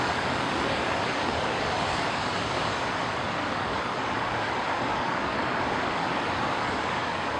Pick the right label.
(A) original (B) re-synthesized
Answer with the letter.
B